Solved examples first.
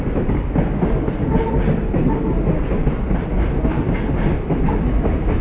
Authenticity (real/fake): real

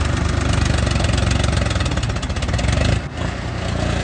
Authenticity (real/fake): real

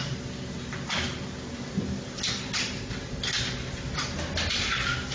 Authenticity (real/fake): real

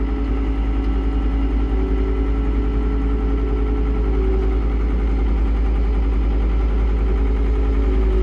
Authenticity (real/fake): real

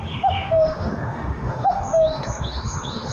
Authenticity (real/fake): fake